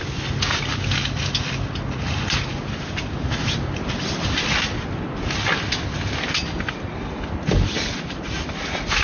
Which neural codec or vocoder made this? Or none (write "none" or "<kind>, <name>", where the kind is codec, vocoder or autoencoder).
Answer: none